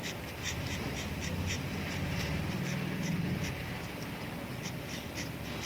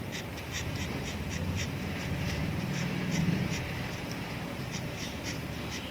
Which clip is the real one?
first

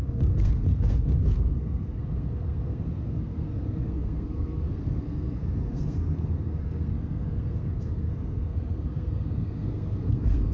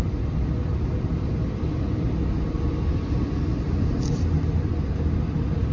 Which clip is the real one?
second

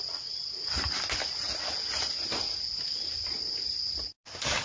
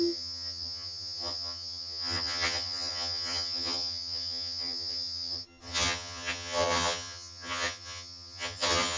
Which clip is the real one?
first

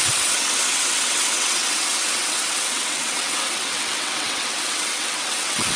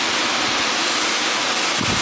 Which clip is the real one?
second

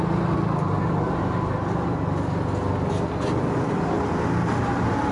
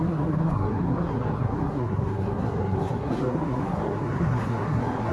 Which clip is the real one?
first